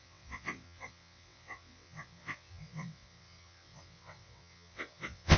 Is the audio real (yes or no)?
no